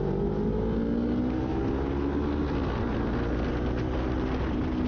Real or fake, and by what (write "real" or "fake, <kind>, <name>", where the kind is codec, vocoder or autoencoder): real